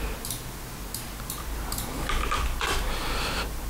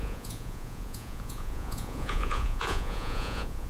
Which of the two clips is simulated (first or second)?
second